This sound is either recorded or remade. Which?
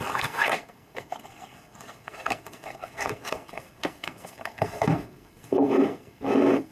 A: remade